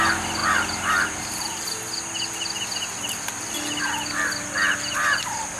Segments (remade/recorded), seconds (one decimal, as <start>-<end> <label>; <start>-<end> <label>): 0.0-5.6 recorded